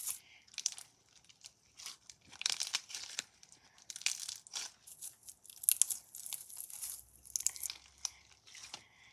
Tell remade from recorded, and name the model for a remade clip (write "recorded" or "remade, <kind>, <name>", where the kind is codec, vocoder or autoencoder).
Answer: recorded